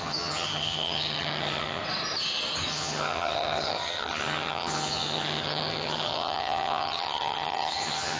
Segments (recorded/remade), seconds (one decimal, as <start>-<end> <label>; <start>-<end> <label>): 0.0-1.8 remade; 1.8-2.7 recorded; 2.7-8.2 remade